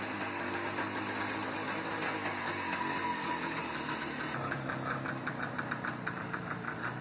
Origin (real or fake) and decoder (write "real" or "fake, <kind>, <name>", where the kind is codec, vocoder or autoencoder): real